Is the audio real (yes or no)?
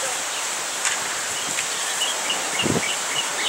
no